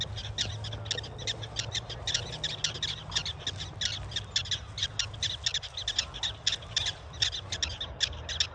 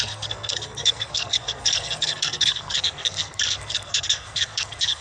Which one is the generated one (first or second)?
second